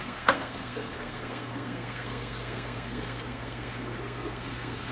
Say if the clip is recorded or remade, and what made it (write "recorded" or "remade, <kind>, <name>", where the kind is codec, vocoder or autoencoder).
remade, codec, SNAC